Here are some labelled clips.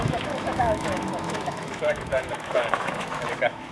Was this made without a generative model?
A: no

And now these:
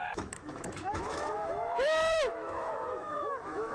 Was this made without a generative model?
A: no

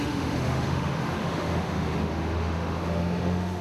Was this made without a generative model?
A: no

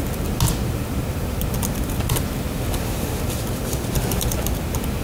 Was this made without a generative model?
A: yes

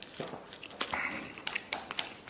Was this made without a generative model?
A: yes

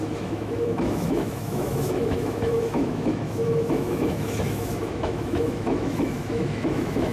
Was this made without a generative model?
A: no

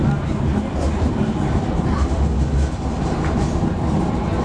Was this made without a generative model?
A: yes